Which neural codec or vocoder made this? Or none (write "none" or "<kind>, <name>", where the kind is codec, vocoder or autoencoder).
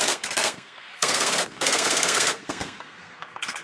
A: codec, SNAC